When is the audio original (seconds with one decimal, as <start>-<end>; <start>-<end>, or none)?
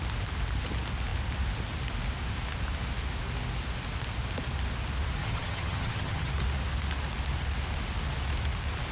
0.0-5.2; 6.3-8.9